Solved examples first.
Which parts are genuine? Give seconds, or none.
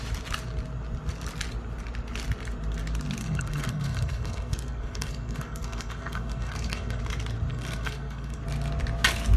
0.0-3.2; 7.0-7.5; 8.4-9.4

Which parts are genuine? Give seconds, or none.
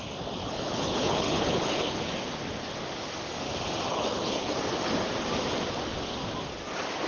0.0-0.4; 2.1-3.9; 4.5-7.1